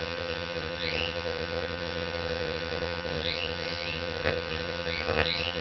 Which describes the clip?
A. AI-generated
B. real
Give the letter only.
A